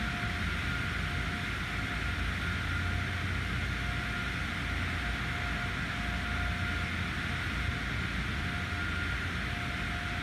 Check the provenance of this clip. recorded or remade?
recorded